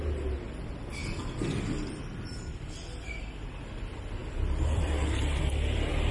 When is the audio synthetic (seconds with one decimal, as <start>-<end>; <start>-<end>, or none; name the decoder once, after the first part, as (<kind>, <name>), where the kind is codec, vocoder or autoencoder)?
4.2-5.4 (vocoder, BigVGAN v2)